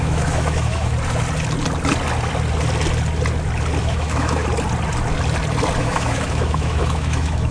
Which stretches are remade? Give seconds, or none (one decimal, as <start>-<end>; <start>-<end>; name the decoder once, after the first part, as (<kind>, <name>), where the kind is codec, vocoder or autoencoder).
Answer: 0.0-0.9 (autoencoder, DAC-VAE); 3.8-4.4; 5.8-7.5

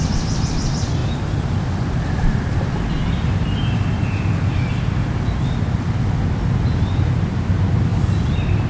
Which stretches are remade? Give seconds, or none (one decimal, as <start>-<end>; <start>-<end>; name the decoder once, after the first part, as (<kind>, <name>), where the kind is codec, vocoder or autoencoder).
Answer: none

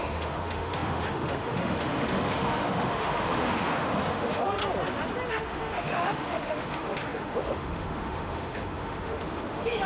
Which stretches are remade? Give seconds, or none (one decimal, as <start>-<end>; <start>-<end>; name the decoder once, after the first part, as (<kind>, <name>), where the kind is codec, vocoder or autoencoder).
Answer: 0.0-4.6 (autoencoder, DAC-VAE); 5.3-9.9

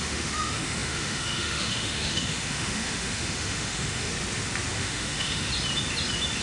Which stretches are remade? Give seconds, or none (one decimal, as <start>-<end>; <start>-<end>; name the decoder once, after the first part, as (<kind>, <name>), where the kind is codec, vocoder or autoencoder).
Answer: 0.0-4.1 (autoencoder, DAC-VAE); 4.7-5.5

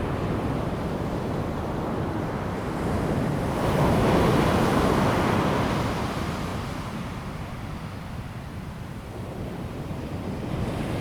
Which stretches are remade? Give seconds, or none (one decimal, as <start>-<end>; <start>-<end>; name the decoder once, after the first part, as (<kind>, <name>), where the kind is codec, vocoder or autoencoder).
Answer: none

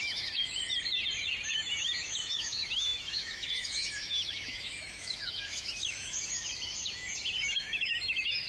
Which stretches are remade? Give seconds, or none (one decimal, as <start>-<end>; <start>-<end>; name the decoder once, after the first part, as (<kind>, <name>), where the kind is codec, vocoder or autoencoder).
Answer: 0.0-0.6 (autoencoder, DAC-VAE); 1.5-8.5

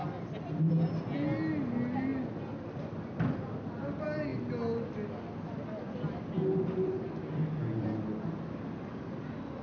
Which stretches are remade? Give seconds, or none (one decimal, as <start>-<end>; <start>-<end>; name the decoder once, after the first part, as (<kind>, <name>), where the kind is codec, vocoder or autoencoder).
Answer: none